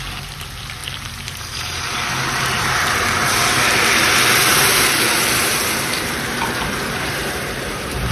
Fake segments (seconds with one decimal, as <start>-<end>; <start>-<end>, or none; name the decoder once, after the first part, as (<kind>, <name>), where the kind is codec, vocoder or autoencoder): 0.8-3.4 (vocoder, BigVGAN v2); 4.5-8.1

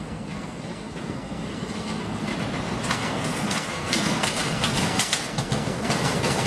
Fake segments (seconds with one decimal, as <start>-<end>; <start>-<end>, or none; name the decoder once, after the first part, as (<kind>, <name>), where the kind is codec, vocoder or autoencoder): 0.0-2.3 (codec, SNAC); 2.9-6.5